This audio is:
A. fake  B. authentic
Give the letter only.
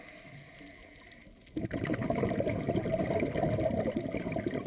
B